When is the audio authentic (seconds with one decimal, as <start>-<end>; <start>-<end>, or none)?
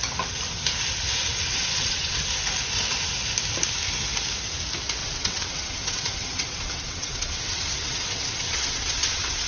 0.0-1.3; 2.2-5.0